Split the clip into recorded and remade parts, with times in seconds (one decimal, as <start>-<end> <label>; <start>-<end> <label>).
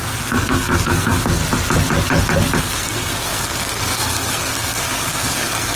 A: 0.0-1.4 remade; 1.4-2.6 recorded; 2.6-5.8 remade